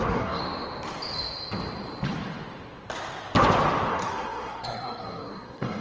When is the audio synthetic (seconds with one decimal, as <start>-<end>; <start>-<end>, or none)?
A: 0.0-0.4; 3.9-5.8